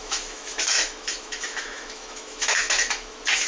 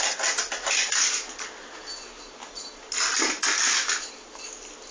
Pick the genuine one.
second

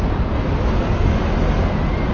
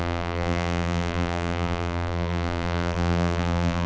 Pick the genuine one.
first